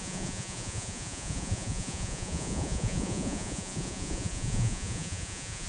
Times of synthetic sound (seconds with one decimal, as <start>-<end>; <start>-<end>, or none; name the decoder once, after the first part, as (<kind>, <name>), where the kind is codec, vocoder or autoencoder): 0.0-5.7 (vocoder, Vocos)